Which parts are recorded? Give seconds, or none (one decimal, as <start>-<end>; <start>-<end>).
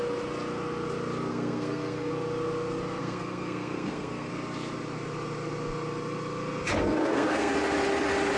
0.0-1.3; 2.1-3.0; 4.3-6.8; 7.5-8.4